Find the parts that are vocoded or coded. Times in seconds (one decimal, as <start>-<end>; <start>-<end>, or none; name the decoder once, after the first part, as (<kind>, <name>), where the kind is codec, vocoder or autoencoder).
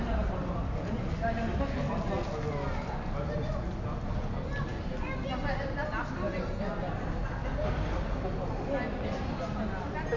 none